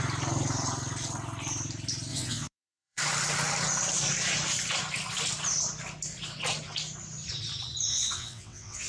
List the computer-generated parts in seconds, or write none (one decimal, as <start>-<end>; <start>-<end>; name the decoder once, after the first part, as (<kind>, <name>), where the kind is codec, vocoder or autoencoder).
2.1-3.0 (vocoder, WaveNeXt); 7.9-8.9